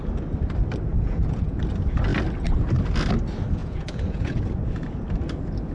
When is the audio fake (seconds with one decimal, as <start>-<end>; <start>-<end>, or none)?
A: 0.9-1.6; 3.6-4.4